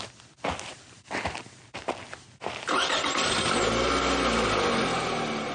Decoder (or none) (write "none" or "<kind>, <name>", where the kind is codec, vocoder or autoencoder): none